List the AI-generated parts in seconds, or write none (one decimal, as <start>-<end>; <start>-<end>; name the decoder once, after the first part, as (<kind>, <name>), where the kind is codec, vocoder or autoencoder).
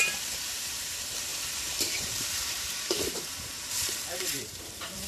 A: 0.0-5.1 (vocoder, BigVGAN v2)